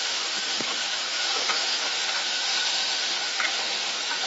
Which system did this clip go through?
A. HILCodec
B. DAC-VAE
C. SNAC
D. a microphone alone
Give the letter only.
B